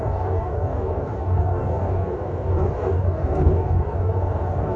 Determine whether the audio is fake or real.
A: fake